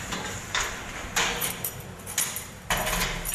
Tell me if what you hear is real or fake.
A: fake